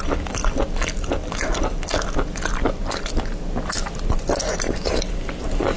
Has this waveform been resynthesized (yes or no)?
no